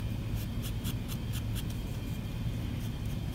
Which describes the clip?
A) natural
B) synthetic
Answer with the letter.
A